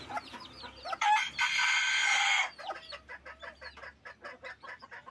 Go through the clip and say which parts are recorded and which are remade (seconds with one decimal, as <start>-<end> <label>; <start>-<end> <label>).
0.0-5.1 recorded